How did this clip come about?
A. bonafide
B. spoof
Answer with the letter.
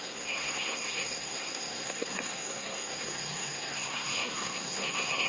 B